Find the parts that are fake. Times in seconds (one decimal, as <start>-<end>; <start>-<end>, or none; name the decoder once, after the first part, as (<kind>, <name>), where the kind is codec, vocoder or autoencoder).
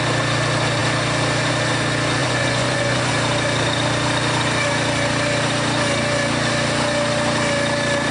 2.2-3.1 (vocoder, Vocos)